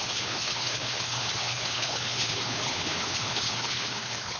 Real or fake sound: fake